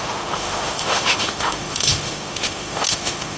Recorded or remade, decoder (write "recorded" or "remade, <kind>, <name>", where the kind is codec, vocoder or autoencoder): remade, autoencoder, DAC-VAE